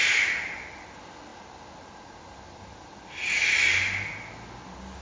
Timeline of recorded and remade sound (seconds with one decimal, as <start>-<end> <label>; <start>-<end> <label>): 0.0-5.0 recorded